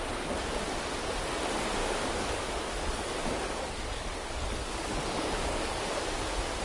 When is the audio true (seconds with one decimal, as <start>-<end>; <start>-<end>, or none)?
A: 0.0-1.8; 5.8-6.6